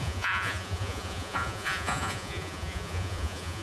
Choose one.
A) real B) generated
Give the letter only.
B